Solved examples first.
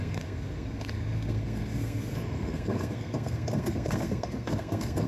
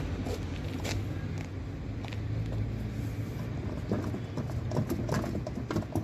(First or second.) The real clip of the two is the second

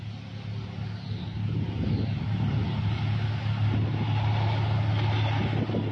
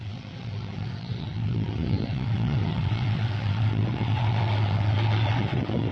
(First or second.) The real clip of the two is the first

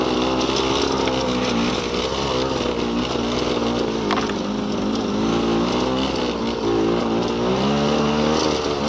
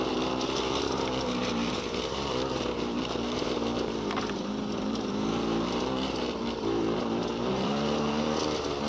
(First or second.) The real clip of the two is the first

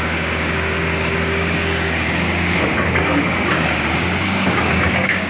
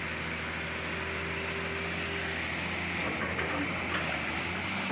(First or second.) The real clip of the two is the second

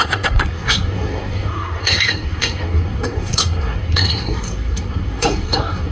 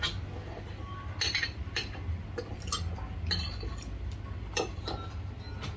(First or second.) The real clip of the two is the second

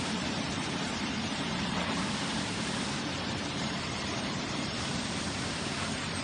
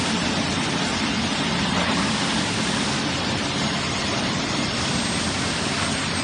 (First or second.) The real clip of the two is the second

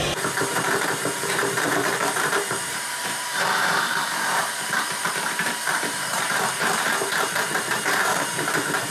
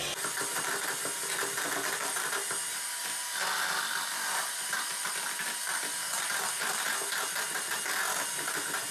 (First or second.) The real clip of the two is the second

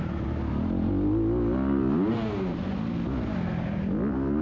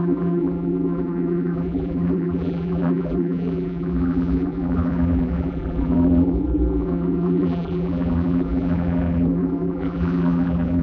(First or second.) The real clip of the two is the first